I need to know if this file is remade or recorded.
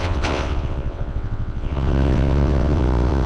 remade